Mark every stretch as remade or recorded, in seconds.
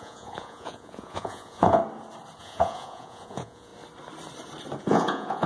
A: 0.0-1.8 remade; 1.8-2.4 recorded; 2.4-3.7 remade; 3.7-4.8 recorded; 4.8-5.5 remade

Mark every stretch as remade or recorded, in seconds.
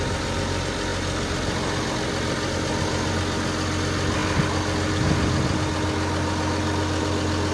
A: 0.0-7.5 recorded